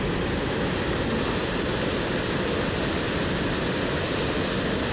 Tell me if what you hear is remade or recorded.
recorded